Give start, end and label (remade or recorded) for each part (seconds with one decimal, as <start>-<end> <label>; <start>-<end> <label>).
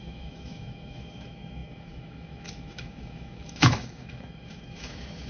0.0-5.3 remade